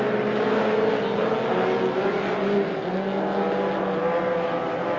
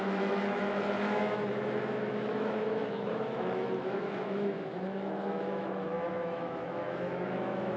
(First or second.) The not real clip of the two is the second